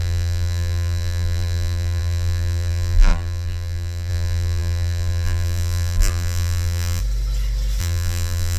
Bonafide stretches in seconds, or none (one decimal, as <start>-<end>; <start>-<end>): 7.0-7.8